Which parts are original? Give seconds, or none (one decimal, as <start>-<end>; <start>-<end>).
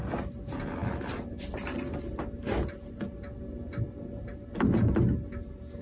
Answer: 0.0-5.8